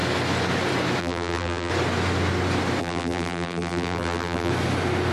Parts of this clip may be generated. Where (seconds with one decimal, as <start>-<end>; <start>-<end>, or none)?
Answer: 1.0-1.7; 2.8-4.5